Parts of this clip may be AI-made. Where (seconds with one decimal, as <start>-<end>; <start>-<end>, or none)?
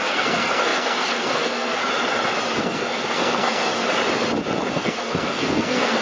0.0-1.8; 2.6-3.7; 4.7-6.0